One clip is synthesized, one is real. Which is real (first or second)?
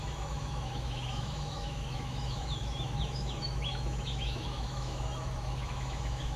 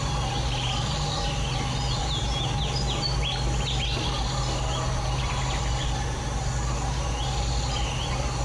second